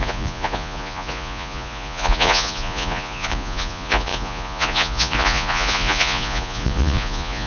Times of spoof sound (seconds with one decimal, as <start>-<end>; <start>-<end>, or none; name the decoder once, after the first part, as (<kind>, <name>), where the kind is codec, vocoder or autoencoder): 0.0-7.5 (vocoder, Vocos)